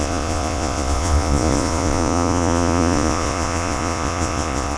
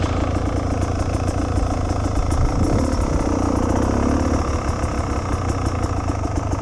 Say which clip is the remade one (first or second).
first